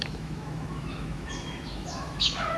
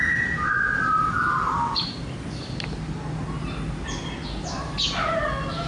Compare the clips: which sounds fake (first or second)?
first